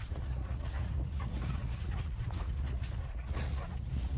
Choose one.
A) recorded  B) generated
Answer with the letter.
B